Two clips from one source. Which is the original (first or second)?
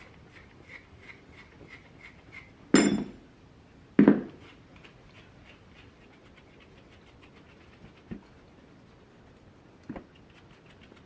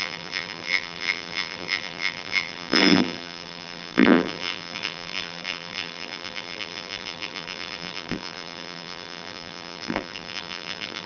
first